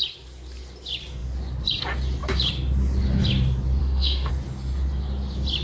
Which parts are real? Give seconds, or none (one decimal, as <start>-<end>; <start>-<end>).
0.0-3.8; 4.3-5.6